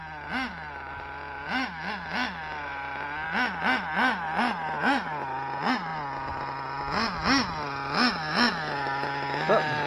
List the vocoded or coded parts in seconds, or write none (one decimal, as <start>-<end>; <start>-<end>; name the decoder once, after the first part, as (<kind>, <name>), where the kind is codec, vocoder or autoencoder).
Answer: none